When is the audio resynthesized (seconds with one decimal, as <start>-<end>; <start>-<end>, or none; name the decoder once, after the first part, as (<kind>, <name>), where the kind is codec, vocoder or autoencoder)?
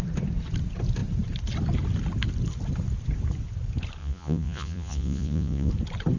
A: 4.0-5.7 (vocoder, Vocos)